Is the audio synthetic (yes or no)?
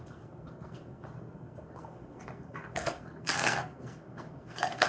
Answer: yes